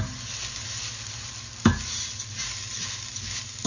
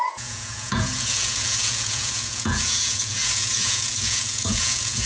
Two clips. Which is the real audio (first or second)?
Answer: first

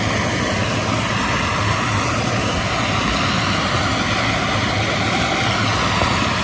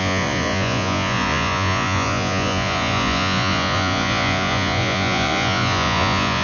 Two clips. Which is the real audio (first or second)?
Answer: first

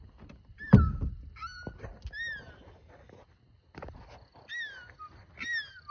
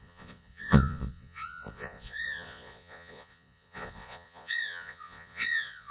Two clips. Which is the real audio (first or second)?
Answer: first